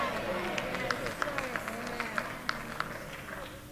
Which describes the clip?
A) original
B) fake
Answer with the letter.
A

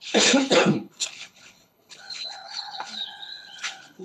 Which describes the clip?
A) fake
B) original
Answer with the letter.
A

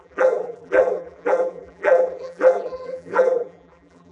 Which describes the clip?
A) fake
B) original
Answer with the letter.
A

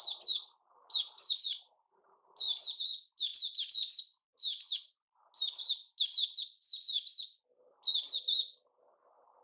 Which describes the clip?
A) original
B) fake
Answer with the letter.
A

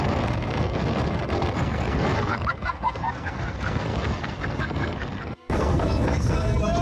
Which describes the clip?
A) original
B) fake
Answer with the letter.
B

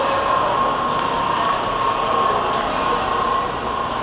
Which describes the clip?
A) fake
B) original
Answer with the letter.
B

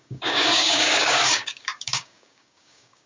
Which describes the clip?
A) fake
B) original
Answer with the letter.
A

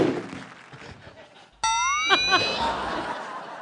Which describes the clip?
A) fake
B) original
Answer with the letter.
B